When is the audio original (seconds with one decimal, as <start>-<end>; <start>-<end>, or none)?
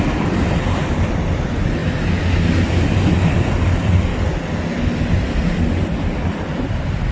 1.8-2.7; 4.1-6.2